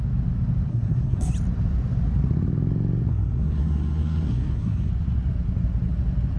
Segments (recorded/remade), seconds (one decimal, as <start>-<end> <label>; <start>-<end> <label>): 0.0-0.7 recorded; 0.7-1.3 remade; 1.3-3.1 recorded; 3.1-4.9 remade; 4.9-6.4 recorded